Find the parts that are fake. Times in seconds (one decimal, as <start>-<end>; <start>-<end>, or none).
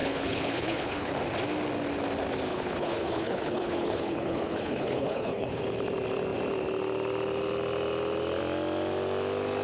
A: 0.0-1.1; 2.5-5.6